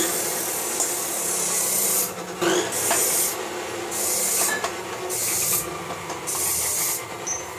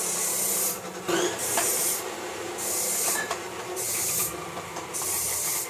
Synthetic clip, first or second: second